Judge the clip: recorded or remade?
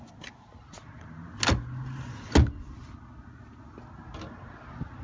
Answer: recorded